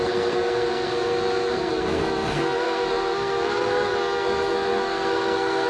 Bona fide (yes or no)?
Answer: no